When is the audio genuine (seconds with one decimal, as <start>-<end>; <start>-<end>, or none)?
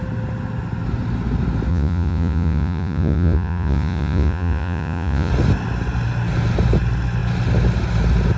0.0-1.7; 5.3-8.4